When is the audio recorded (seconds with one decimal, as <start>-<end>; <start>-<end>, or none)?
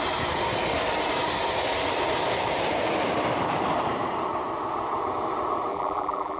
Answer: 0.0-5.7